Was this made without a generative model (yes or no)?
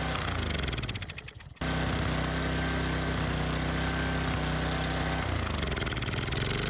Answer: yes